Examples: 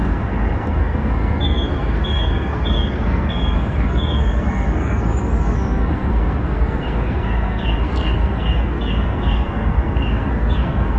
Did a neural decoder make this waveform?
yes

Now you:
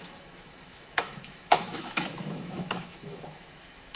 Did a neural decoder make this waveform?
yes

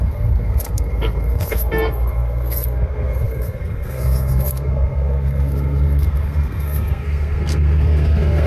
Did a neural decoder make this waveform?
yes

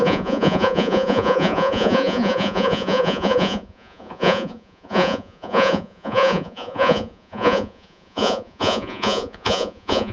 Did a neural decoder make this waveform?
yes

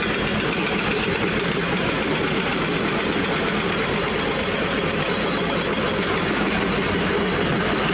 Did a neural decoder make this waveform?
no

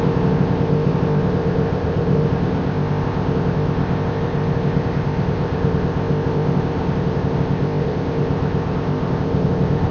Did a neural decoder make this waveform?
yes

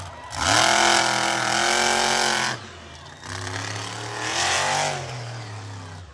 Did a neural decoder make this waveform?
no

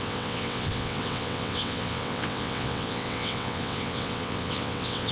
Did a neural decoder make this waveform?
yes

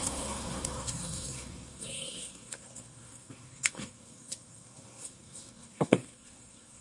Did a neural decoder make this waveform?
yes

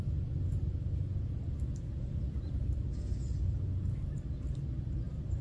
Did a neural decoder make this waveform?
no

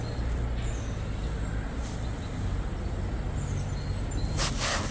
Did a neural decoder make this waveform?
no